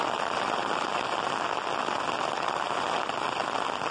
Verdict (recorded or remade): recorded